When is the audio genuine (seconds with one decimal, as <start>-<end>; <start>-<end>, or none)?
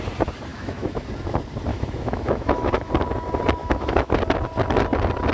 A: 0.0-0.5; 1.0-1.7; 2.9-3.6; 4.1-5.3